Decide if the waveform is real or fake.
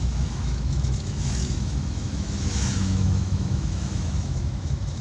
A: fake